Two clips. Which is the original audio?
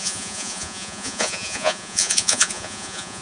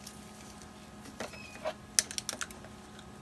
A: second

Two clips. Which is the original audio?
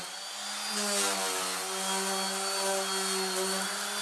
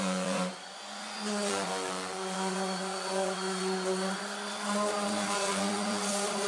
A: first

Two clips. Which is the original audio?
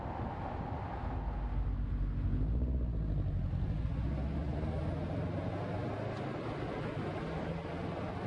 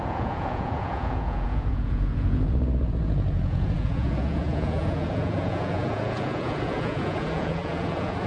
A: first